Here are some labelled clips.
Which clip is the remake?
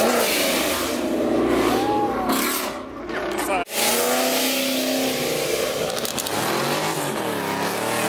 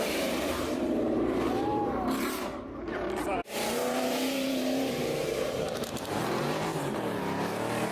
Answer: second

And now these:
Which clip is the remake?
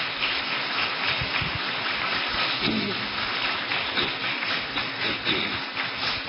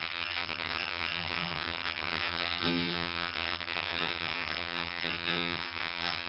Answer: second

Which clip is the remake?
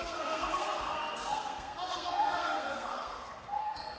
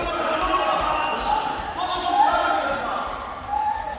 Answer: first